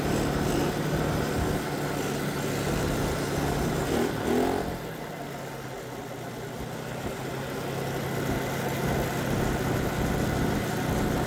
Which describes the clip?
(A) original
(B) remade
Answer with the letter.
A